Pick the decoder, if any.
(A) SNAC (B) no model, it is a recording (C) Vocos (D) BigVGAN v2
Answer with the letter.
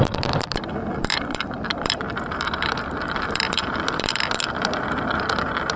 D